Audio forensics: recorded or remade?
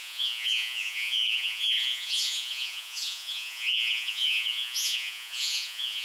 remade